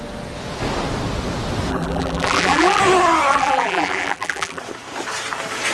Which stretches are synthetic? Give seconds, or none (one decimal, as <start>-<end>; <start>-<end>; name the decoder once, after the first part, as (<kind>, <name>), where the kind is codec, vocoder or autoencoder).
1.7-2.8 (vocoder, BigVGAN v2); 3.3-4.6